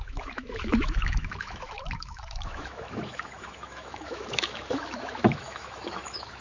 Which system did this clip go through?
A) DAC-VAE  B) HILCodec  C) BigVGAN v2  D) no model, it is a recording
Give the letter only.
A